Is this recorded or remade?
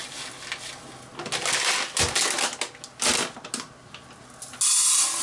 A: recorded